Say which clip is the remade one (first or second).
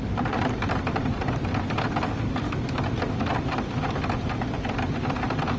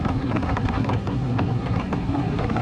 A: second